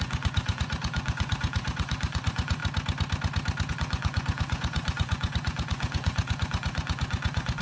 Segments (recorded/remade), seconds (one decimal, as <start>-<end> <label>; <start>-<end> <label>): 0.0-2.6 remade; 2.6-3.7 recorded; 3.7-7.6 remade

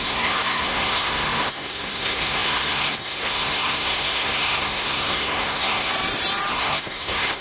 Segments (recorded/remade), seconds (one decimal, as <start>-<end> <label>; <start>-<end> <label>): 0.0-5.9 remade; 5.9-6.5 recorded; 6.5-7.4 remade

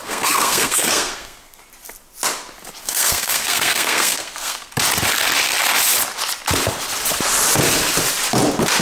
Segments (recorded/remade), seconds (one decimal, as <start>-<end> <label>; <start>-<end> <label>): 0.0-1.6 remade; 1.6-2.8 recorded; 2.8-4.7 remade; 4.7-8.8 recorded

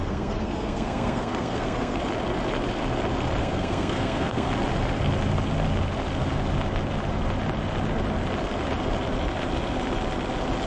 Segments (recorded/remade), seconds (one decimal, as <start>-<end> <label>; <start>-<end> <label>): 0.0-2.0 remade; 2.0-3.4 recorded; 3.4-4.5 remade; 4.5-10.7 recorded

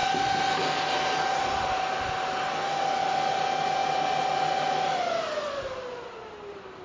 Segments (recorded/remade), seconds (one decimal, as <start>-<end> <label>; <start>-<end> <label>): 0.0-6.8 recorded

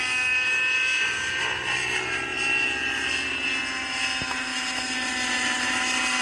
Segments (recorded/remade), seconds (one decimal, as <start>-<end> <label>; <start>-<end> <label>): 0.0-6.2 recorded

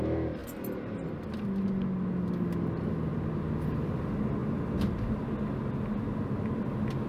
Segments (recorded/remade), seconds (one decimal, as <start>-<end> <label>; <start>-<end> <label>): 0.0-7.1 recorded